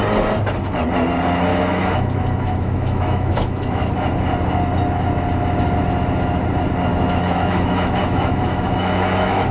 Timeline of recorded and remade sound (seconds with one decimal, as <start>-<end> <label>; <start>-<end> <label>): 0.0-1.5 recorded; 1.5-3.9 remade; 3.9-6.9 recorded; 6.9-9.5 remade